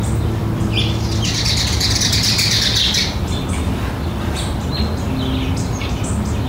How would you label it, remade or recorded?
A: recorded